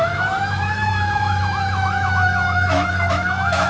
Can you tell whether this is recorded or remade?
remade